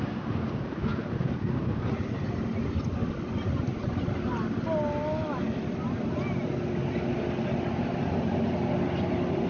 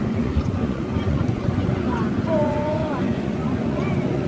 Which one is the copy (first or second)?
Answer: second